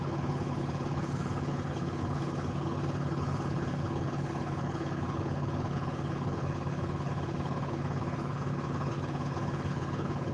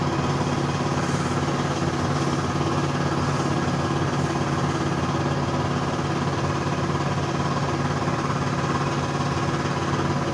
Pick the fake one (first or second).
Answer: first